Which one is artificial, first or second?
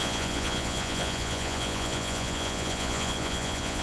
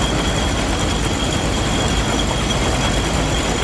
first